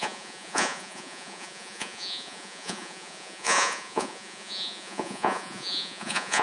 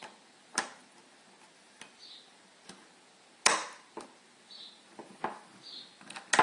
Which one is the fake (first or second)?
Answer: first